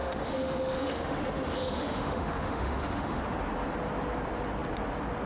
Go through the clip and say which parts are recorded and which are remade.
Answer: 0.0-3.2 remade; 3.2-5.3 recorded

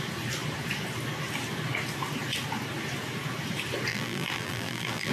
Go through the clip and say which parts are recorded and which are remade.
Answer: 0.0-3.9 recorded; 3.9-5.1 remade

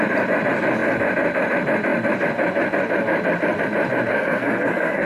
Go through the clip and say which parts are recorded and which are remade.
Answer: 0.0-4.1 recorded; 4.1-5.1 remade

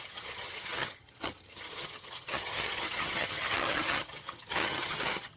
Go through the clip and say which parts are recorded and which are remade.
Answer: 0.0-5.4 remade

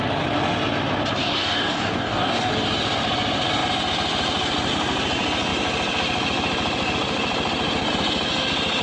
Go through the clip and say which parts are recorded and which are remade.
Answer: 0.0-1.2 recorded; 1.2-2.5 remade; 2.5-8.8 recorded

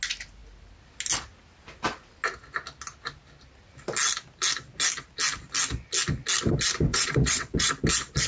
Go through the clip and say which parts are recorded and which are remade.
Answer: 0.0-6.9 recorded; 6.9-7.7 remade; 7.7-8.3 recorded

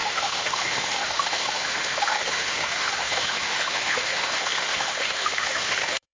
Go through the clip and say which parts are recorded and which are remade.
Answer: 0.0-6.1 remade